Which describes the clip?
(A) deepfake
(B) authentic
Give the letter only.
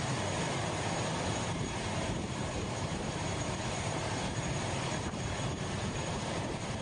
A